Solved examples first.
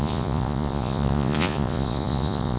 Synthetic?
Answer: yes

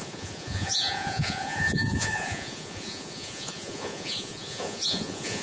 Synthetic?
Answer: yes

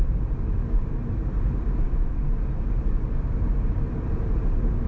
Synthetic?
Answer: no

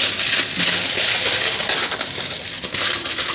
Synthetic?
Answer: no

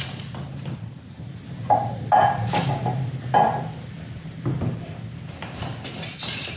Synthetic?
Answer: no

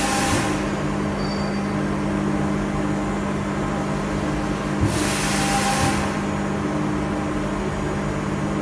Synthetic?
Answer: no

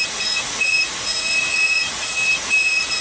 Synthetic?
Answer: yes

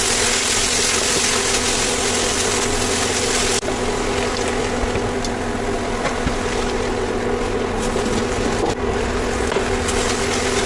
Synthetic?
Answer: no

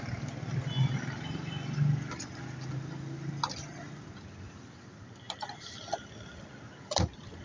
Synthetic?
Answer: no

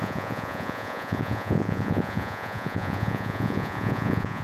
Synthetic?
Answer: yes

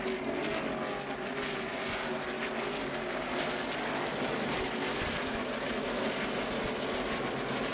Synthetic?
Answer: no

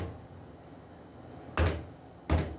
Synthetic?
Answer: no